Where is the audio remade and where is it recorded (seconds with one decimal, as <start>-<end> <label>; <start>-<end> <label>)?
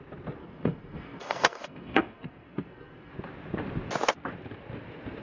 0.0-0.4 recorded; 0.4-3.1 remade; 3.1-5.2 recorded